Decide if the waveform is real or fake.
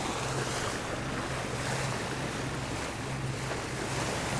real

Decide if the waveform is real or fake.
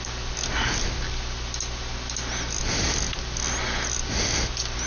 real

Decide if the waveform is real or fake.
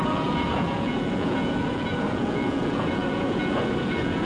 fake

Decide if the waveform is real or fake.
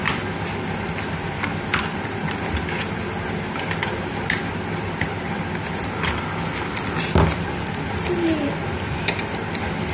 real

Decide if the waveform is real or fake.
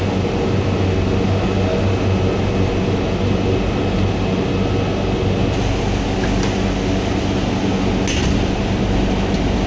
real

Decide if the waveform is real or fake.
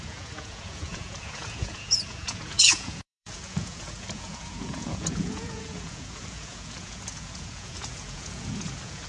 fake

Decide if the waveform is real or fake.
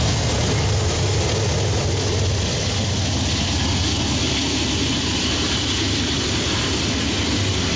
real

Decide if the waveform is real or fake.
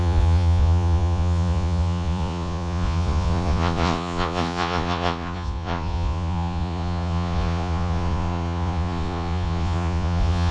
fake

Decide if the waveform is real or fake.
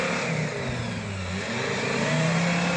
real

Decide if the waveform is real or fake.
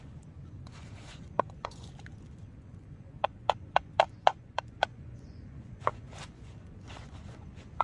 fake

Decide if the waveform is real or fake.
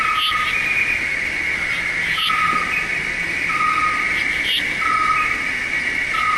real